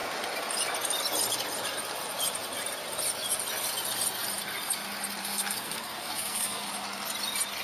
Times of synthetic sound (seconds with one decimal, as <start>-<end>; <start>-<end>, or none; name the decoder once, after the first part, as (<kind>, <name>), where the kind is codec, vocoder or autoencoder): 5.2-6.7 (codec, SNAC)